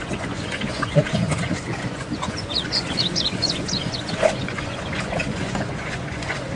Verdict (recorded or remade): remade